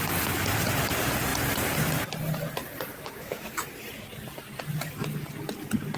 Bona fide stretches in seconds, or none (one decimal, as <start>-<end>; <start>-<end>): 0.0-2.9; 3.5-6.0